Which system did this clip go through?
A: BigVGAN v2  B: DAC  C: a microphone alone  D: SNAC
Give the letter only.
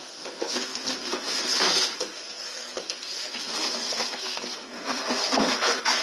D